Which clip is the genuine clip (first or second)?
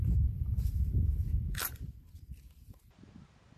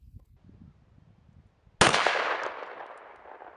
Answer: second